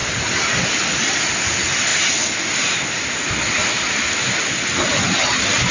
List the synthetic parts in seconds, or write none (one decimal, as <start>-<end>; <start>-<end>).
none